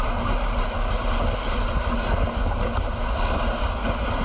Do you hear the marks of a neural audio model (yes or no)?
no